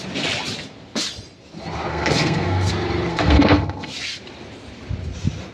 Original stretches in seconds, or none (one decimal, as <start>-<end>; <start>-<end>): 0.0-1.9; 2.7-3.1; 3.9-5.5